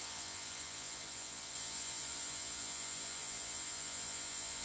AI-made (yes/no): yes